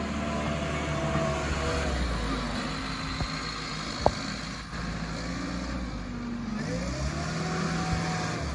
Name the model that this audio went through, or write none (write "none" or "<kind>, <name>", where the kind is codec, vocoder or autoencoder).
none